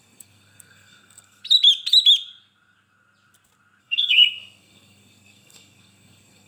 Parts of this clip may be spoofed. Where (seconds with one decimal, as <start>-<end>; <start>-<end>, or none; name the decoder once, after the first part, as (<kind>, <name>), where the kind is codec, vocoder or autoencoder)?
0.0-1.4 (codec, SNAC); 3.8-6.5